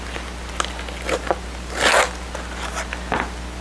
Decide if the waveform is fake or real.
real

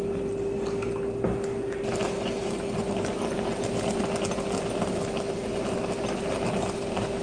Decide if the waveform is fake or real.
real